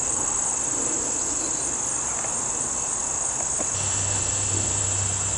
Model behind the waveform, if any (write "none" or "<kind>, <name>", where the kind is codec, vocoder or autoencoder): none